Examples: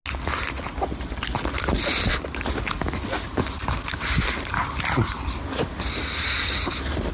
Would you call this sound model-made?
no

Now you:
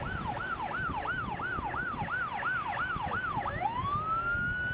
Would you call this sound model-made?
no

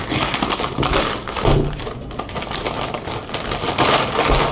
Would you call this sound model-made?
no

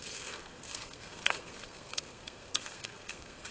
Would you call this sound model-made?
yes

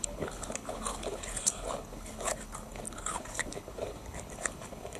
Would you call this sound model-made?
yes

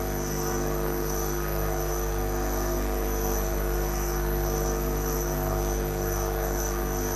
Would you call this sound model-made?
yes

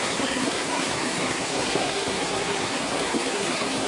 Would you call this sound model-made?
yes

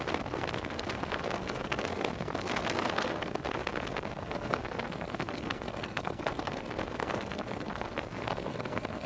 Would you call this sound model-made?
yes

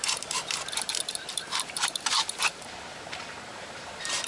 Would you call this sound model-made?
yes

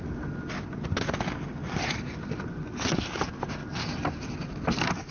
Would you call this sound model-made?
no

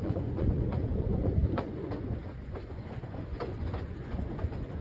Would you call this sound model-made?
yes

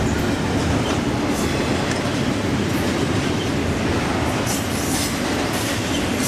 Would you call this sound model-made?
no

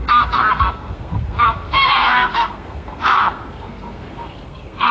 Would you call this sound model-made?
yes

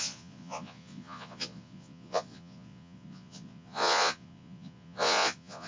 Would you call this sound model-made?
yes